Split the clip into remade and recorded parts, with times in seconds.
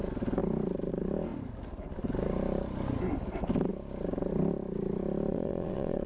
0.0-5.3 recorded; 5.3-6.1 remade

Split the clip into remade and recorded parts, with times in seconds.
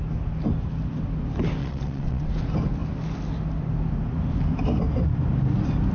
0.0-1.6 recorded; 1.6-2.3 remade; 2.3-5.9 recorded